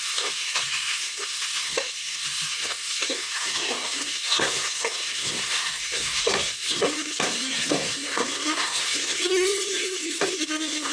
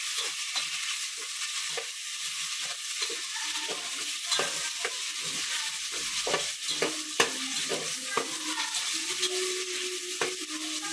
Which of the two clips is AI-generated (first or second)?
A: first